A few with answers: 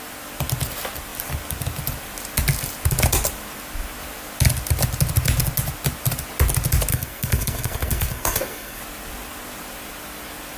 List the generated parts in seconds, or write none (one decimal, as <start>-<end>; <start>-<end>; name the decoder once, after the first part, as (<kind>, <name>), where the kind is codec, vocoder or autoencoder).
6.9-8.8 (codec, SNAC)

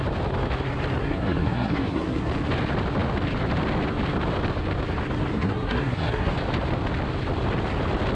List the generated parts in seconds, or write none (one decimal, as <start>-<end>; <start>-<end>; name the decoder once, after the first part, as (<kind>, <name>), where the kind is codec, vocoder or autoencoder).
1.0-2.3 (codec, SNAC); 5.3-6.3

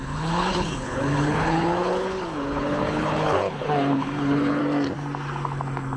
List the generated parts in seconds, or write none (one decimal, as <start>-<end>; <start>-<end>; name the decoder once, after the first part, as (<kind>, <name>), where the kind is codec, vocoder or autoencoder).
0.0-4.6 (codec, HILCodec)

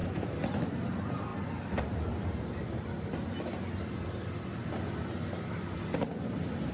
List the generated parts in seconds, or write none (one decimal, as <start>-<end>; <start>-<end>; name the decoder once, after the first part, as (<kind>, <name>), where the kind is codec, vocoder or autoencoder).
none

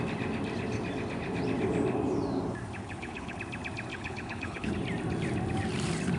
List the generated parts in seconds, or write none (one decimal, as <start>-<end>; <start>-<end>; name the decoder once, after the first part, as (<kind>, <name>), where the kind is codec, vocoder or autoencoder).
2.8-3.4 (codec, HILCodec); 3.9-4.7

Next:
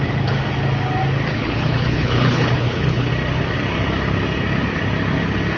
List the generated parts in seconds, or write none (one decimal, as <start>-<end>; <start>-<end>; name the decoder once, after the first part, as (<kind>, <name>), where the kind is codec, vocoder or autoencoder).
1.3-3.1 (codec, HILCodec)

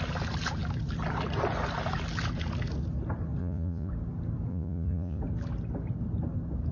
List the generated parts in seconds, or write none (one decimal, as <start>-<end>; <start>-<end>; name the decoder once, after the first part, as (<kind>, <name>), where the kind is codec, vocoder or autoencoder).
3.4-3.9 (vocoder, Vocos); 4.5-5.2

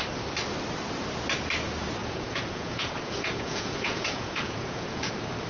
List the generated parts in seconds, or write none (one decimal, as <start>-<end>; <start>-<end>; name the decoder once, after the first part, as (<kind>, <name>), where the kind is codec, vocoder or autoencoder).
2.0-5.1 (vocoder, Vocos)